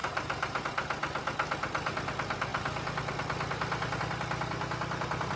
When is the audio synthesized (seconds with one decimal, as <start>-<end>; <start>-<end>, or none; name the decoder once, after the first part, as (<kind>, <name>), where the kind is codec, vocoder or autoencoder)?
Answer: 0.0-0.6 (vocoder, BigVGAN v2)